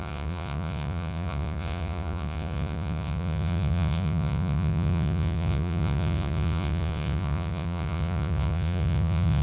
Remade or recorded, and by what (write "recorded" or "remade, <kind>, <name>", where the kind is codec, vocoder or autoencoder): remade, vocoder, Vocos